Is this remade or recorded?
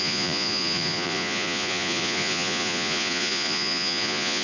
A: remade